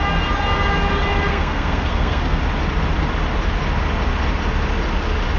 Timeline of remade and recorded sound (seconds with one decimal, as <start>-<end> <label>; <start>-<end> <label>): 0.0-1.3 recorded; 1.3-2.4 remade; 2.4-5.4 recorded